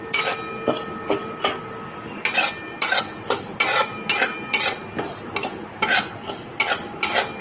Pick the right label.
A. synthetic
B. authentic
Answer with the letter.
B